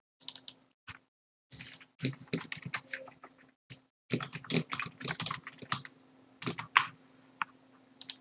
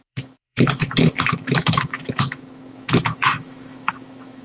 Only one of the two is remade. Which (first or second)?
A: second